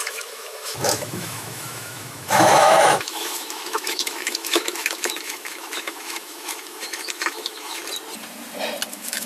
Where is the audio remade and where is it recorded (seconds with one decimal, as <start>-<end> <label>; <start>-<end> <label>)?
0.0-7.8 remade; 7.8-8.9 recorded; 8.9-9.3 remade